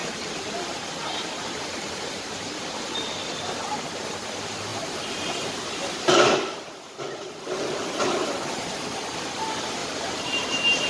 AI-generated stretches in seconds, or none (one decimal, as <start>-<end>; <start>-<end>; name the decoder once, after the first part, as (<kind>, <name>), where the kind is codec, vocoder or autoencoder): 0.0-3.4 (vocoder, BigVGAN v2); 4.7-8.0; 9.8-10.9